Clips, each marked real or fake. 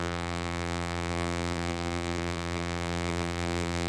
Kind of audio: fake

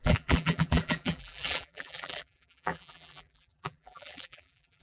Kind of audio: fake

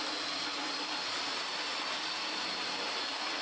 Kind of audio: real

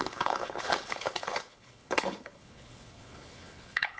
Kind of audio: fake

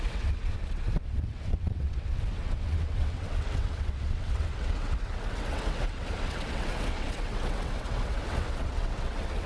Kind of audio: fake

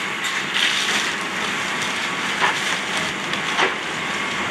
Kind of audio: real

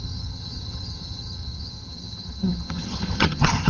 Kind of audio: fake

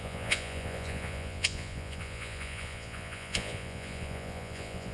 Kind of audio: fake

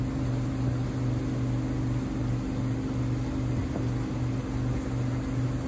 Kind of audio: real